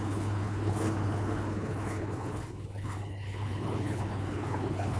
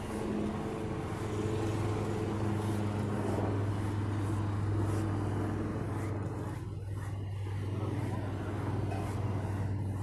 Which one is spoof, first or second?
first